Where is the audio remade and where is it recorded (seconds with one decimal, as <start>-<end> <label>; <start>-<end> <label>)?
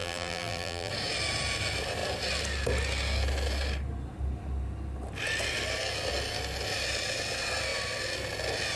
0.0-0.9 remade; 0.9-8.8 recorded